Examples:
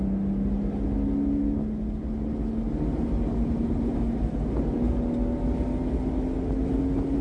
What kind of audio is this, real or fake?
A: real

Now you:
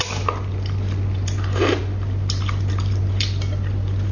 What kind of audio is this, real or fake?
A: real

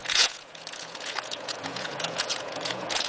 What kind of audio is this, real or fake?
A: fake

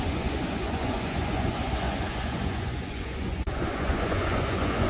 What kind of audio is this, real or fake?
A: fake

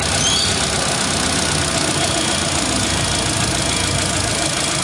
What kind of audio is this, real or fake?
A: real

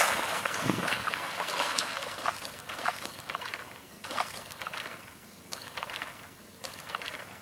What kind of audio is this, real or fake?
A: fake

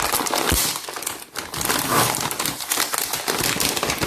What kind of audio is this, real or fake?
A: real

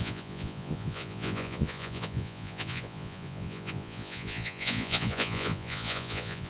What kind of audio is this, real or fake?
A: fake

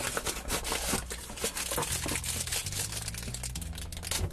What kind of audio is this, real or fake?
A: real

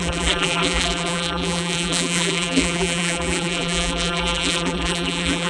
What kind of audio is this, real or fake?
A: fake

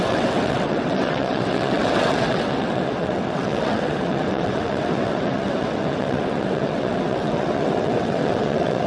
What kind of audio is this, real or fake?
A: fake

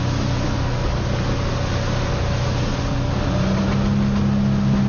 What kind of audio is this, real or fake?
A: real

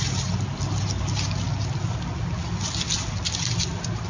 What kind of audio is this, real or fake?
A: real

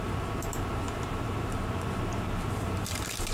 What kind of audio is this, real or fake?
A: fake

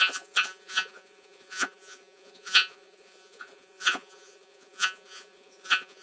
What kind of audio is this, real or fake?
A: fake